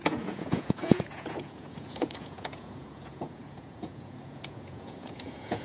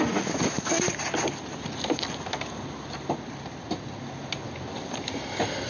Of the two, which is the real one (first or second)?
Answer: second